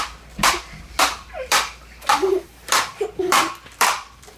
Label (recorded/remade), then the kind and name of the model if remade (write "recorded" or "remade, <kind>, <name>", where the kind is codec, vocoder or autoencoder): remade, vocoder, BigVGAN v2